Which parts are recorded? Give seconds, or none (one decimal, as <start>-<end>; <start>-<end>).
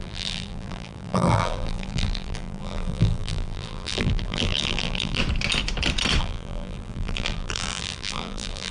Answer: 5.2-6.2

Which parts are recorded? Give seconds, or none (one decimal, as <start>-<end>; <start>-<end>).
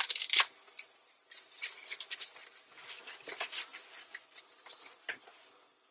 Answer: 0.0-3.7; 5.0-5.9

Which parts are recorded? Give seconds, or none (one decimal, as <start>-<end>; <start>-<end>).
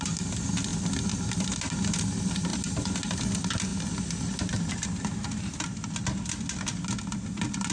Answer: 0.0-7.7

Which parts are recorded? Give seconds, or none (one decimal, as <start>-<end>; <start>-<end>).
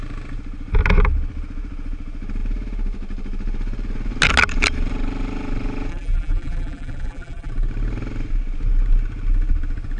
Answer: 0.0-5.9; 7.5-10.0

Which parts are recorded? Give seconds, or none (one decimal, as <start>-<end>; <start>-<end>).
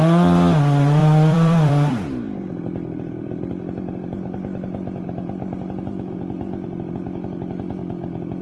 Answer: 0.0-1.0; 3.5-8.4